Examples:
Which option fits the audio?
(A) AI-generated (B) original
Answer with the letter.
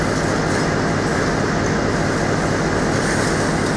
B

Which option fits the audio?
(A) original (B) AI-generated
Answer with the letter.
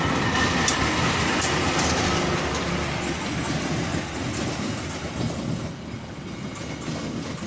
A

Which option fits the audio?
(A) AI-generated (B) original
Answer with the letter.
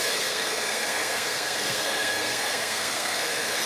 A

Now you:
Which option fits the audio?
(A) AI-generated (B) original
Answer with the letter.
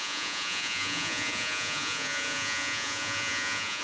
A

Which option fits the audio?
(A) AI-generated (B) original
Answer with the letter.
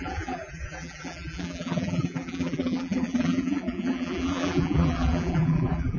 A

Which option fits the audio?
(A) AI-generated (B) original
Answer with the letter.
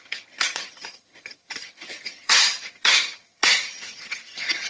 A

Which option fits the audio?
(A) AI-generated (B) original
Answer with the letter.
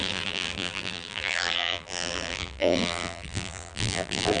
A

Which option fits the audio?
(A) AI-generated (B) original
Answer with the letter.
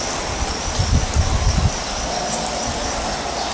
B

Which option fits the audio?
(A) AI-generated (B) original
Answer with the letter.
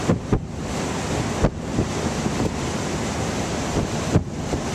A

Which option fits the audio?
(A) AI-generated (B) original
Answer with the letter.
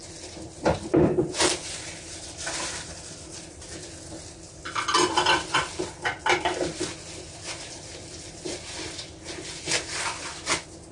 B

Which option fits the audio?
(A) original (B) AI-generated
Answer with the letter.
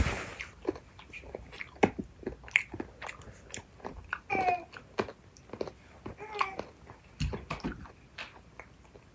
A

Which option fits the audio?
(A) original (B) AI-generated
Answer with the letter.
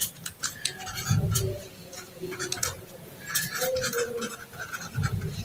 B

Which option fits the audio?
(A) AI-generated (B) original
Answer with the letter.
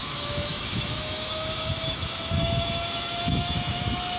A